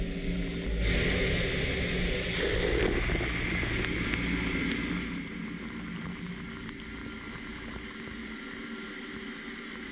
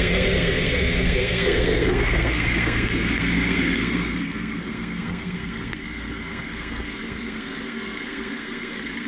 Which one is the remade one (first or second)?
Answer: second